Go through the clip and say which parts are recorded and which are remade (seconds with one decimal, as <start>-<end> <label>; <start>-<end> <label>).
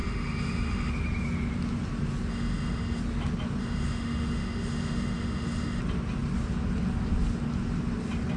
0.0-0.9 remade; 0.9-2.3 recorded; 2.3-3.0 remade; 3.0-3.6 recorded; 3.6-5.8 remade; 5.8-8.4 recorded